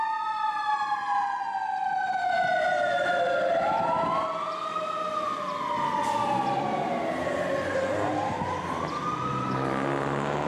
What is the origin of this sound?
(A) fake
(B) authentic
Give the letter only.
B